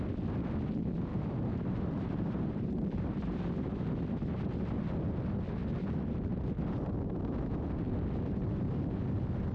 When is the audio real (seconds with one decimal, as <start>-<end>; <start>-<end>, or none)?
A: 0.0-1.1; 3.0-9.5